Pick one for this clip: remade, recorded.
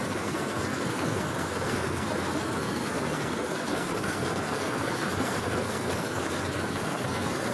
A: remade